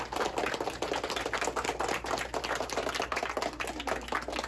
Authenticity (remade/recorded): recorded